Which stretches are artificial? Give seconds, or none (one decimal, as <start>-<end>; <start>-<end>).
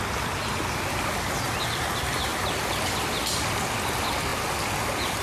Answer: none